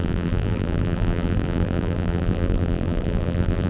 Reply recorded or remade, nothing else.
remade